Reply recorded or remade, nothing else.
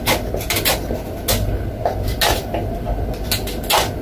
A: recorded